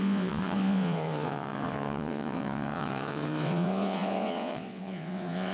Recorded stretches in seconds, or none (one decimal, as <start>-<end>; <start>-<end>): none